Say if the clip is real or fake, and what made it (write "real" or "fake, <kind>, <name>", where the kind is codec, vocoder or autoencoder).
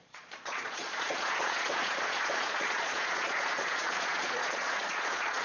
fake, vocoder, Vocos